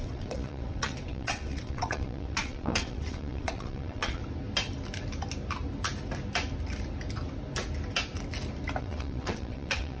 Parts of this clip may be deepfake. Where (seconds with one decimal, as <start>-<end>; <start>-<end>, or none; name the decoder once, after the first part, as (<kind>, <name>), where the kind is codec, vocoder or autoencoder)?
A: 0.0-4.2 (vocoder, WaveNeXt); 8.8-10.0